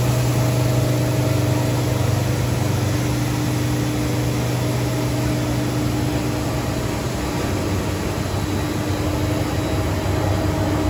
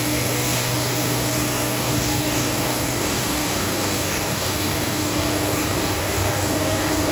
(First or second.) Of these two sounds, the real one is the first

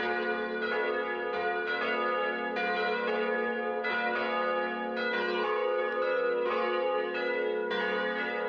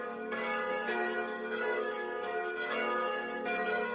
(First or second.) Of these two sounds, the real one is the first